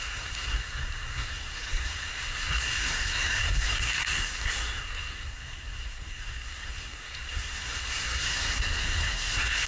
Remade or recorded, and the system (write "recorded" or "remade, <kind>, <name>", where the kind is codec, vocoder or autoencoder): remade, codec, SNAC